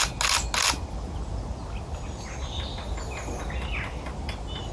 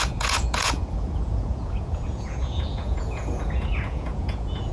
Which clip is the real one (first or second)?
first